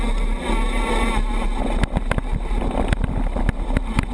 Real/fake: real